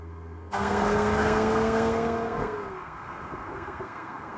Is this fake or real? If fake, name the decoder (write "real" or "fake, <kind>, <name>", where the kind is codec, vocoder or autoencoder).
fake, codec, SNAC